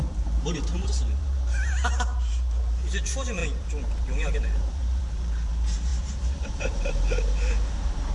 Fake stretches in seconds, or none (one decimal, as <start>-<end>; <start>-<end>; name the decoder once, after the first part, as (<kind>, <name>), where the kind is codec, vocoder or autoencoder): 0.0-8.1 (vocoder, BigVGAN v2)

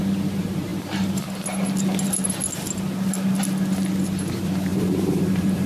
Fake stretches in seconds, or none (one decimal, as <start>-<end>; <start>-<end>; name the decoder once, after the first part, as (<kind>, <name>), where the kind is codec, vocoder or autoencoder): 4.7-5.7 (vocoder, BigVGAN v2)

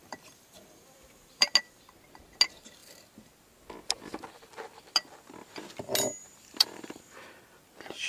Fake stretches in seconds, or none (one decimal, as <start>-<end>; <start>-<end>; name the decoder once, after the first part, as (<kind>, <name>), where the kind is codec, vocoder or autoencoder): 0.0-1.5 (vocoder, BigVGAN v2); 6.2-7.0

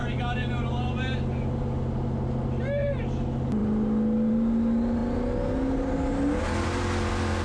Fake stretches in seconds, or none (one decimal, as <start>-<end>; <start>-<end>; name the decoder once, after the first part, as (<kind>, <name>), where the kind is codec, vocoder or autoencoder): none

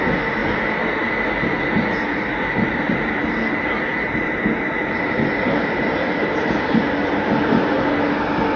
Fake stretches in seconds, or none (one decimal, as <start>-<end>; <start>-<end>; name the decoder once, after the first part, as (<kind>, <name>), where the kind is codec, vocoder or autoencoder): none

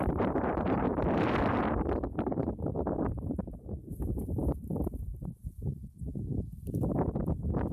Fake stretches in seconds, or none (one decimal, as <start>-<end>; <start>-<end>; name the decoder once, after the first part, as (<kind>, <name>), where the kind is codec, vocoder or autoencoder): 0.9-3.4 (vocoder, BigVGAN v2); 4.4-7.0

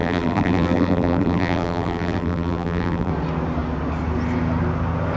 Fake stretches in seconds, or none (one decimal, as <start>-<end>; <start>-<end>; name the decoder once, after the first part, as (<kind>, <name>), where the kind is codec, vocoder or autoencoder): 0.0-3.1 (vocoder, BigVGAN v2)